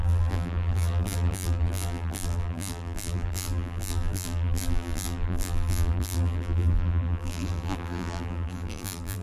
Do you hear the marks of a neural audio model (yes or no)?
yes